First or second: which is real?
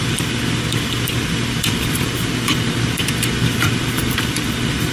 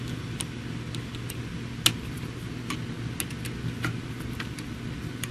second